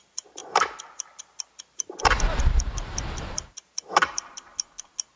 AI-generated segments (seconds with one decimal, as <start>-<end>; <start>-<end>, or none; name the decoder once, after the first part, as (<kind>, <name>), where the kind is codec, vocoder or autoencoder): 0.0-4.5 (vocoder, BigVGAN v2)